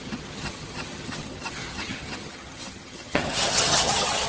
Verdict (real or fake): fake